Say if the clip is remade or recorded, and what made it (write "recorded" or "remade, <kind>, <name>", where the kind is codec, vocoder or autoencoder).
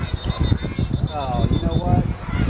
recorded